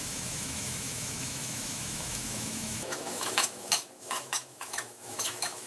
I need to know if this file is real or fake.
fake